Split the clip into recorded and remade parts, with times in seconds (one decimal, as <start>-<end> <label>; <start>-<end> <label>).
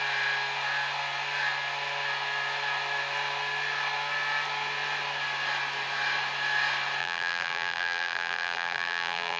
0.0-7.0 recorded; 7.0-9.4 remade